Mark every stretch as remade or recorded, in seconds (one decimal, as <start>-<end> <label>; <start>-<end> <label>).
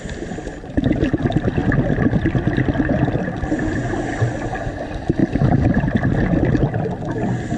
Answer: 0.0-7.6 recorded